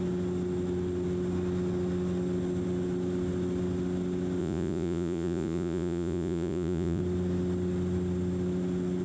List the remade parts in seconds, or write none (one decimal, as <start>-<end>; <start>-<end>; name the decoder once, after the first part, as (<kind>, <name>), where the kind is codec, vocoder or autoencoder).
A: 4.4-7.0 (vocoder, Vocos)